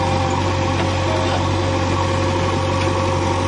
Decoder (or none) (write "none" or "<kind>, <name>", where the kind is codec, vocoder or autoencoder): none